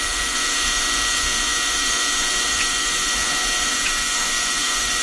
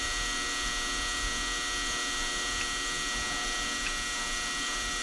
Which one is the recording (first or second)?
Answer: second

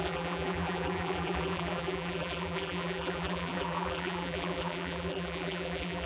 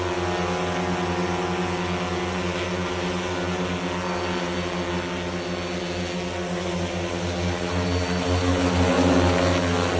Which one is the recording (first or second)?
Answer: second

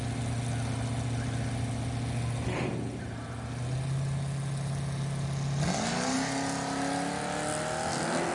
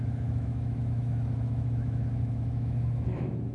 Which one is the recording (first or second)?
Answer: first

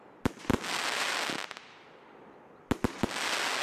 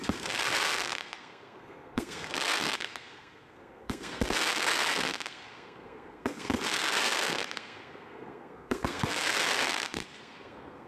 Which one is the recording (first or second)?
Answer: first